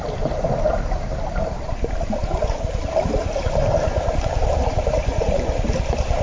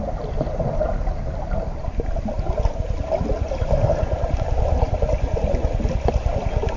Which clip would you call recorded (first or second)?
second